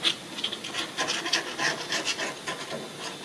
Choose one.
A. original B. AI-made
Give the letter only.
A